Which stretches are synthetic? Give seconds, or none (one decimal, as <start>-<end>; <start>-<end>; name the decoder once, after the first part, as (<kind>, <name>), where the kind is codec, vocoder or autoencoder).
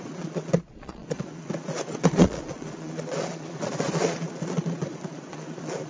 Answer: 0.0-5.9 (vocoder, Vocos)